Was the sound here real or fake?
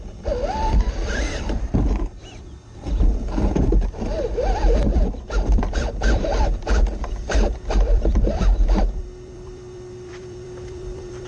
fake